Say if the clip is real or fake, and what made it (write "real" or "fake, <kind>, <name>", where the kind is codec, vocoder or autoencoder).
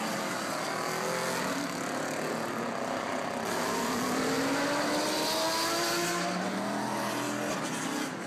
real